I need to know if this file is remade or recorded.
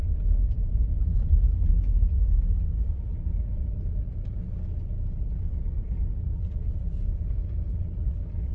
recorded